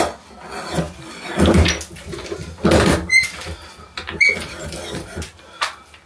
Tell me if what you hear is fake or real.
real